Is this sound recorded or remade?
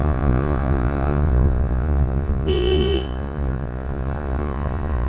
remade